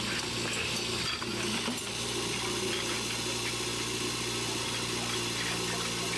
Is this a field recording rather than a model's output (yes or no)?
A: yes